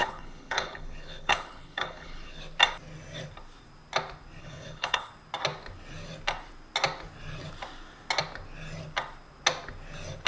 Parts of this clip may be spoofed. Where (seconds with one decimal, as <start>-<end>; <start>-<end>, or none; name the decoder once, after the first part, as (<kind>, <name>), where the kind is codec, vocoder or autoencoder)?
0.0-2.4 (codec, HILCodec); 4.4-5.1